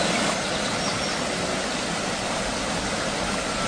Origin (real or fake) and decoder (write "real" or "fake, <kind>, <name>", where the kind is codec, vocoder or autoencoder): real